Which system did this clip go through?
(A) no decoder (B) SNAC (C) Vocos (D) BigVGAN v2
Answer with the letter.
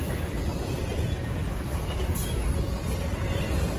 A